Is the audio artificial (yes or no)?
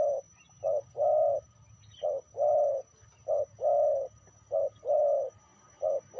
no